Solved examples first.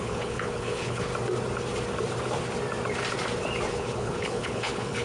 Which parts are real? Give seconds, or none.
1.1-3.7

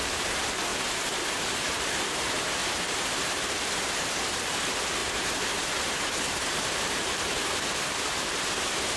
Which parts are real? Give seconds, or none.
none

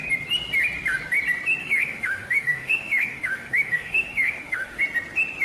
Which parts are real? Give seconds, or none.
0.0-1.6; 4.8-5.4

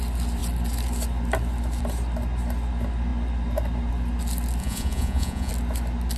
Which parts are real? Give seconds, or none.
0.0-4.6; 5.5-6.2